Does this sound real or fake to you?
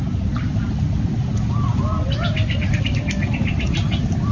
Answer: real